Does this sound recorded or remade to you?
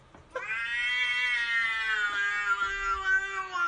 recorded